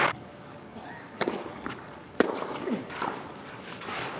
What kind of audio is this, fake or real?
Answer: fake